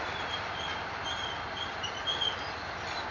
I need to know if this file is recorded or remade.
recorded